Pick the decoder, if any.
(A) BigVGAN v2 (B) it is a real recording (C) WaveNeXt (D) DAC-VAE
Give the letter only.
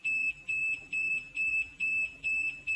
A